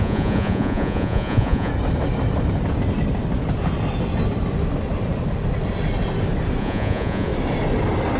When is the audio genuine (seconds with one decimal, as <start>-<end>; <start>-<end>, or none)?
1.7-6.6; 7.3-8.2

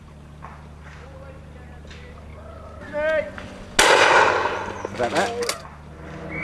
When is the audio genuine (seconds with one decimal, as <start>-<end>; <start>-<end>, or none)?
0.0-6.4

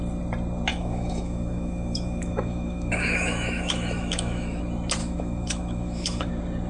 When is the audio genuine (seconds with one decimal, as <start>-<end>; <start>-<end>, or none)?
0.0-0.7; 4.6-5.0; 6.3-6.7

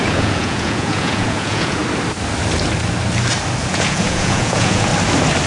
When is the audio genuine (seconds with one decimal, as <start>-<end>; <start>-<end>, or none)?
1.8-3.7; 4.9-5.5

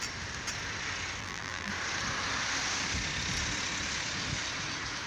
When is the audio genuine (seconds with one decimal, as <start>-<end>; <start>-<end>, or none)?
0.0-1.2; 1.7-5.1